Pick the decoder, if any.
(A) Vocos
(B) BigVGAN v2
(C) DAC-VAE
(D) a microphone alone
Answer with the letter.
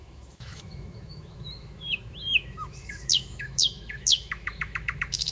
C